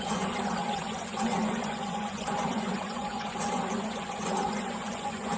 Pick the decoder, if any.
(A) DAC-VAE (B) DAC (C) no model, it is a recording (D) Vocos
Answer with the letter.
D